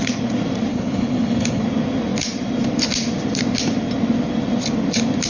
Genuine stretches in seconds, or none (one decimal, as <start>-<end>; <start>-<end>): 0.0-0.7; 1.6-5.3